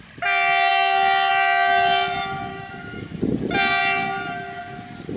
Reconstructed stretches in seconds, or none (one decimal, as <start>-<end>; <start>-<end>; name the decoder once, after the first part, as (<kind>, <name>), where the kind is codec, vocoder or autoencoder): 2.5-3.2 (autoencoder, DAC-VAE)